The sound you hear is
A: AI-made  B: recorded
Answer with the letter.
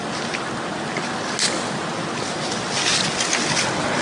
B